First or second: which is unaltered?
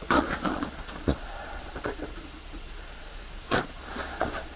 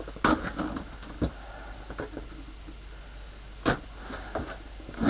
second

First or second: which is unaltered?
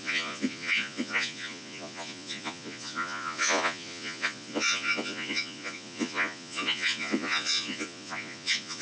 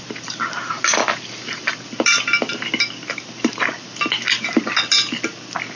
second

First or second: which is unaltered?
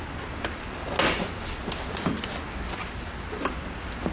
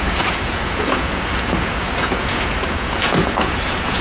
first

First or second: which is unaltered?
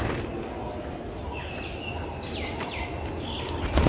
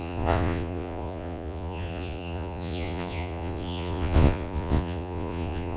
first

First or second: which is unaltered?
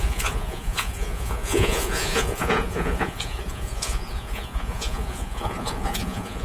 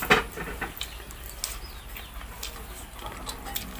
second